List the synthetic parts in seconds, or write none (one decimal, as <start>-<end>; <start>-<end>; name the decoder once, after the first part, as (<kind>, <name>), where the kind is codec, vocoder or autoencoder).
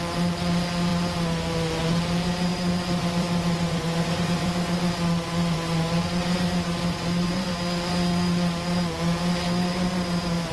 2.5-7.5 (vocoder, Vocos)